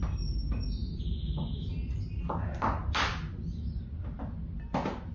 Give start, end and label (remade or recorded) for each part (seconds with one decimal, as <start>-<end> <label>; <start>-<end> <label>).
0.0-5.1 recorded